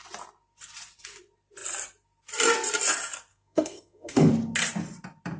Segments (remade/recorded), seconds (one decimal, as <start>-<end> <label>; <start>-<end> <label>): 0.0-3.3 recorded; 3.3-4.3 remade; 4.3-5.4 recorded